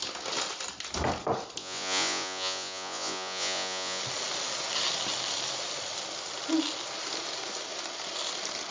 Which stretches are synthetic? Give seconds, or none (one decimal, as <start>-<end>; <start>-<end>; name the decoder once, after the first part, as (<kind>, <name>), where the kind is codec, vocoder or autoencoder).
1.6-4.0 (vocoder, Vocos)